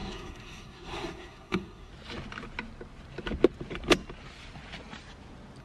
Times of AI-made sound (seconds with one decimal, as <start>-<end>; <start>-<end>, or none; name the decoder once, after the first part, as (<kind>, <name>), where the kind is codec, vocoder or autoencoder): 0.0-1.9 (codec, SNAC)